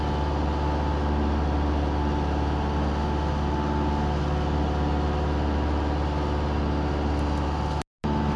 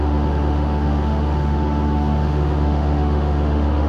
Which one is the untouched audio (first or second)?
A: first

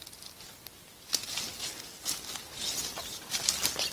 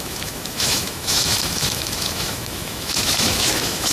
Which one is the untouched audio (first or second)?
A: first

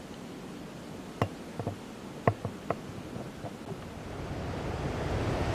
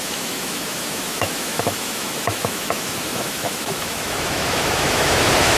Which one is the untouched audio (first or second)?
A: first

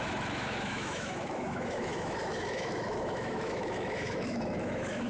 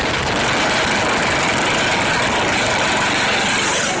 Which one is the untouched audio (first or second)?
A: second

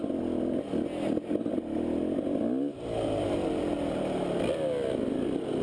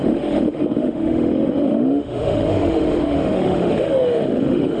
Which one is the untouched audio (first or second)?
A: first